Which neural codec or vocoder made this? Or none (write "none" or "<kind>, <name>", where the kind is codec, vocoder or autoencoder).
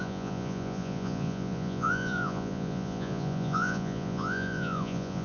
vocoder, Vocos